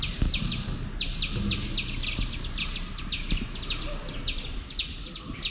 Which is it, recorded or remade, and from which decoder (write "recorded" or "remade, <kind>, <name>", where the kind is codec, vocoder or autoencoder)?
recorded